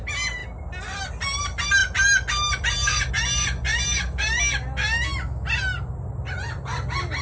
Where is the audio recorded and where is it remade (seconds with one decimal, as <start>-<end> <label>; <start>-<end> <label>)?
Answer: 0.0-7.2 recorded